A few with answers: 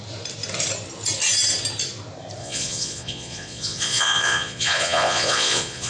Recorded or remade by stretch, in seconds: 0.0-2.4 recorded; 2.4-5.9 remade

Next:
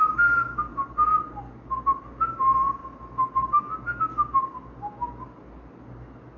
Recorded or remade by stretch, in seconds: 0.0-6.4 recorded

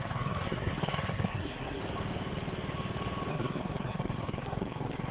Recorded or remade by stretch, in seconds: 0.0-1.8 remade; 1.8-3.3 recorded; 3.3-5.1 remade

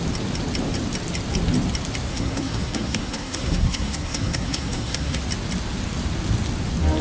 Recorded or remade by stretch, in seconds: 0.0-2.1 recorded; 2.1-5.2 remade; 5.2-7.0 recorded

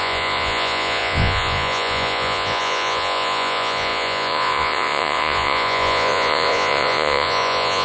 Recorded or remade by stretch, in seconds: 0.0-7.8 remade

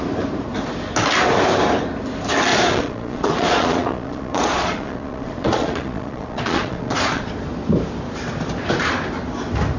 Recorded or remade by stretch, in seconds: 0.0-2.5 recorded; 2.5-7.3 remade; 7.3-9.8 recorded

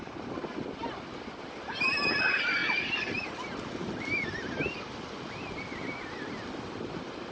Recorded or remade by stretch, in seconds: 0.0-7.3 recorded